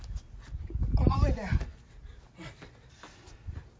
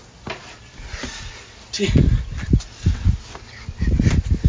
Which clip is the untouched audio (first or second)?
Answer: second